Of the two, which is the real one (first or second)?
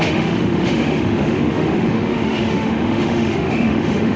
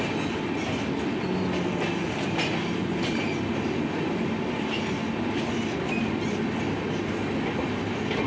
second